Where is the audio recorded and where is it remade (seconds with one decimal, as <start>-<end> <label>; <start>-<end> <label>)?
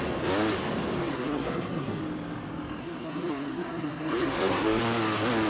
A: 0.0-1.1 recorded; 1.1-2.0 remade; 2.0-2.8 recorded; 2.8-4.8 remade; 4.8-5.5 recorded